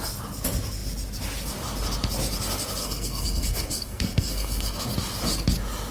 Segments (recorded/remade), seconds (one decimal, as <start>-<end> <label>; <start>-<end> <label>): 0.0-2.8 recorded; 2.8-4.8 remade; 4.8-5.9 recorded